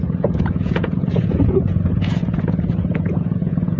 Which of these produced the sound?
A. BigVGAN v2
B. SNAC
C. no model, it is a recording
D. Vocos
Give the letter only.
D